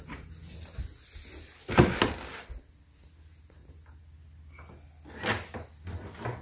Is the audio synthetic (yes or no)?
no